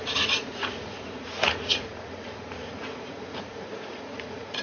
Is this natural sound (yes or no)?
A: no